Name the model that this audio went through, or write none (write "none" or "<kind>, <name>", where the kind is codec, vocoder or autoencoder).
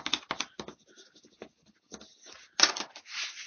none